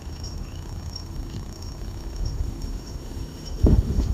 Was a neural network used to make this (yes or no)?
yes